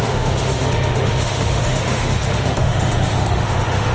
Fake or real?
fake